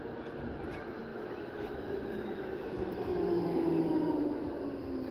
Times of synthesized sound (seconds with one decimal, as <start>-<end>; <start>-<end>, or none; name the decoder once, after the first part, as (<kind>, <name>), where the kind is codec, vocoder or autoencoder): 1.1-4.2 (autoencoder, DAC-VAE)